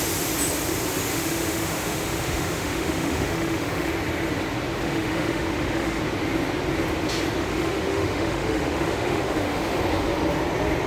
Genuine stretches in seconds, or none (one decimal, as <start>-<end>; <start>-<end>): 0.0-1.1; 3.9-4.8; 6.0-7.4; 9.8-10.9